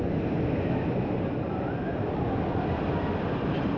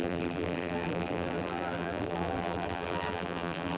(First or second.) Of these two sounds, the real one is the first